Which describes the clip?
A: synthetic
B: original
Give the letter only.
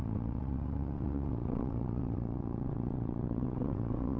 A